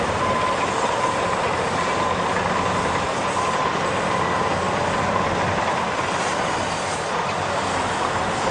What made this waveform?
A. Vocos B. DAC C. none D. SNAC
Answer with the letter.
C